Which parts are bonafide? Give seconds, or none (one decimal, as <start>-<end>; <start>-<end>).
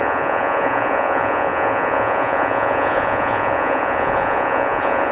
none